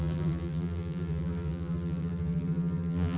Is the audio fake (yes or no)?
yes